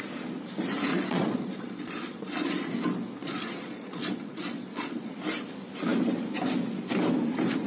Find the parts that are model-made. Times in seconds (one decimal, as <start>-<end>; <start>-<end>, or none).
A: 0.9-2.7; 3.2-5.1